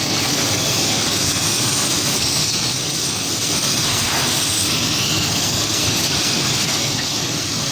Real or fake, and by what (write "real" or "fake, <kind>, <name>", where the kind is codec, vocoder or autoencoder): fake, codec, SNAC